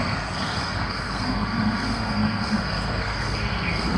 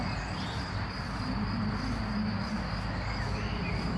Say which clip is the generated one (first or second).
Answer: first